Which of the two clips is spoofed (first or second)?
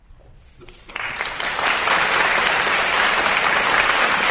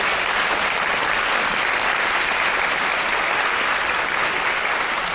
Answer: first